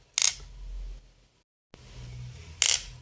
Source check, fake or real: real